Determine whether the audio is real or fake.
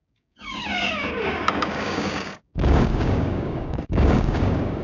fake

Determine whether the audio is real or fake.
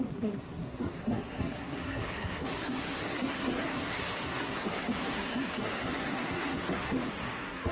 fake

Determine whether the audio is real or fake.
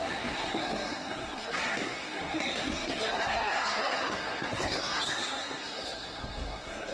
fake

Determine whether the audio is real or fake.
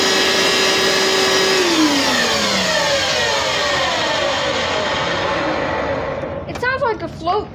real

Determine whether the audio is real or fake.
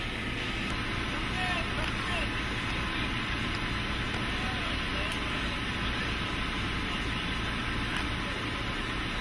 real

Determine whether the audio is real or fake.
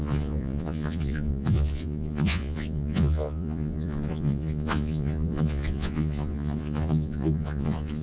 fake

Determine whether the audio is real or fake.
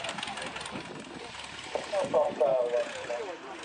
real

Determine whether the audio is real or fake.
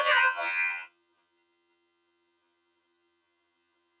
fake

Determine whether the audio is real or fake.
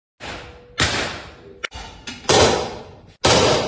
real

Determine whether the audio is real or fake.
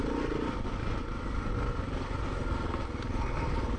real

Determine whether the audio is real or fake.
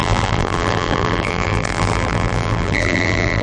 fake